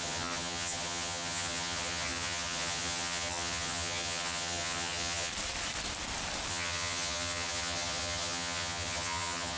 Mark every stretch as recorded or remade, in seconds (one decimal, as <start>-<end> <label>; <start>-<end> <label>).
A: 0.0-5.3 remade; 5.3-6.5 recorded; 6.5-9.6 remade